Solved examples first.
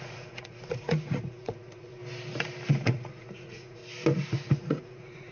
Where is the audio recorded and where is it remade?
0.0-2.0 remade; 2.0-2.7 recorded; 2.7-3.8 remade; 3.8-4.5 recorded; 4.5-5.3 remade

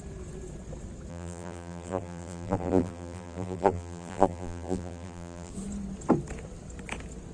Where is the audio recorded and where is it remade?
0.0-1.1 recorded; 1.1-5.5 remade; 5.5-7.3 recorded